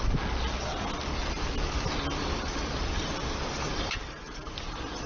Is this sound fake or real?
real